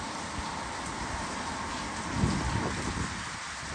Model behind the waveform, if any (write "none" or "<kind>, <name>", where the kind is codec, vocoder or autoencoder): none